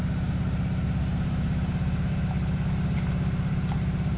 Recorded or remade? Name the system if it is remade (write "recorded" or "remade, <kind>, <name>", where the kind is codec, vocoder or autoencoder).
recorded